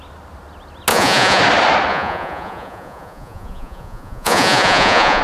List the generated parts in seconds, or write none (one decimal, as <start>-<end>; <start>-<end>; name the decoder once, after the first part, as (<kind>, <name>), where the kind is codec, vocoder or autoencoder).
0.9-1.4 (vocoder, Vocos); 1.9-5.2